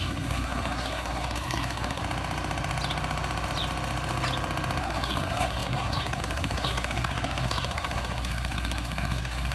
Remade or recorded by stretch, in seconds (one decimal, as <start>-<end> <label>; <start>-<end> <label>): 0.0-2.0 remade; 2.0-4.8 recorded; 4.8-9.5 remade